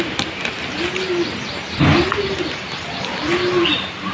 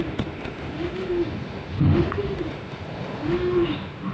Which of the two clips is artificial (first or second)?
second